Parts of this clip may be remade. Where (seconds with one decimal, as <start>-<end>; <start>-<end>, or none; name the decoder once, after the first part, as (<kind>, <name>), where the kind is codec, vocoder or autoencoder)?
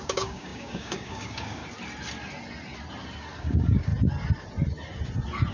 0.0-1.6 (codec, DAC); 3.4-3.9